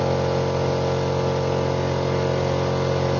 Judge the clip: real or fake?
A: real